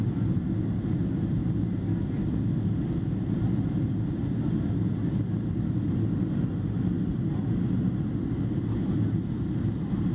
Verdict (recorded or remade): recorded